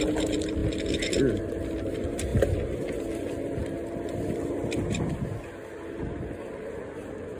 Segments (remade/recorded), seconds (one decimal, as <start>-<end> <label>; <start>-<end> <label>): 0.0-7.4 recorded